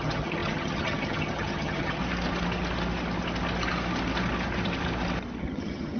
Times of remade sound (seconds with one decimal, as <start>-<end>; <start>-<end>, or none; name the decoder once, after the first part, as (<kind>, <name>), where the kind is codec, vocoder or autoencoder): 0.0-2.0 (vocoder, HiFi-GAN); 5.4-6.0